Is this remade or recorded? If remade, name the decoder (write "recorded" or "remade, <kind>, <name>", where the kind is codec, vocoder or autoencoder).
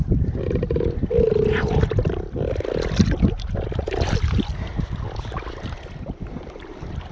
recorded